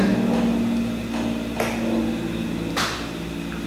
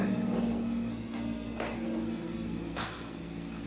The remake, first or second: second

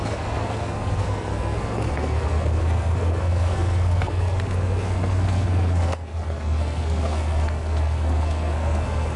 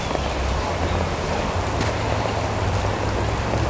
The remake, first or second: first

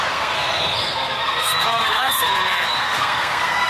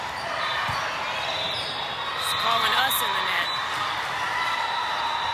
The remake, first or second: first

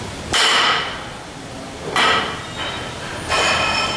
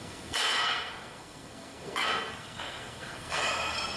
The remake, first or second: second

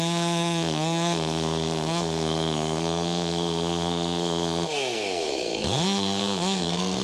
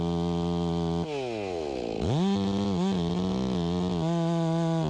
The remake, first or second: first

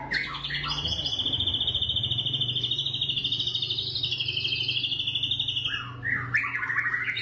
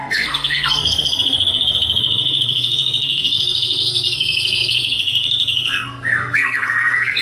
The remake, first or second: second